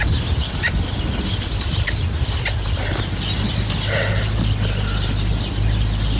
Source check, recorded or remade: recorded